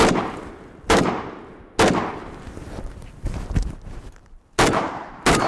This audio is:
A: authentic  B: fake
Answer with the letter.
A